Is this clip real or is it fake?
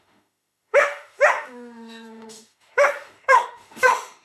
fake